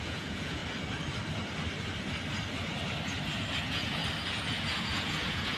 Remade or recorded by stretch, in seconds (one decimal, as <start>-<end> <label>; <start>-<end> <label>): 0.0-0.6 remade; 0.6-3.6 recorded; 3.6-4.0 remade; 4.0-4.6 recorded; 4.6-5.6 remade